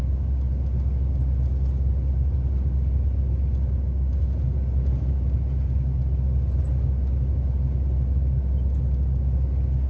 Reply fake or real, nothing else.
real